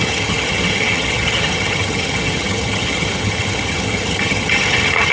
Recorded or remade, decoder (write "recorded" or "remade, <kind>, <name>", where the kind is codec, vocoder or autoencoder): remade, vocoder, HiFi-GAN